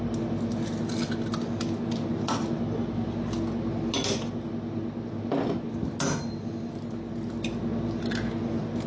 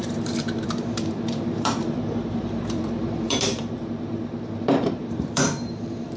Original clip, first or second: first